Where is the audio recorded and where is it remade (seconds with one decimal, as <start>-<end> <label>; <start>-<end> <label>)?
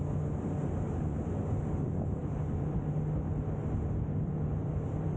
0.0-2.2 recorded; 2.2-2.8 remade; 2.8-4.6 recorded; 4.6-5.2 remade